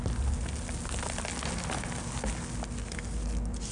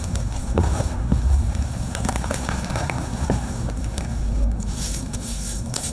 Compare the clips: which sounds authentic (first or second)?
first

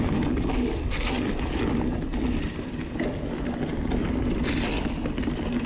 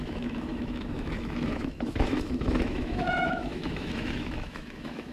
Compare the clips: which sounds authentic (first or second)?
first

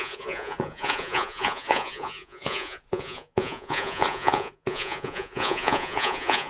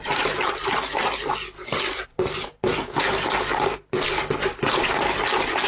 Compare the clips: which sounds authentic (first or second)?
second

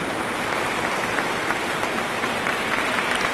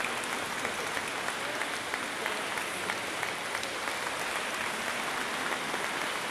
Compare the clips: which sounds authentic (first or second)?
second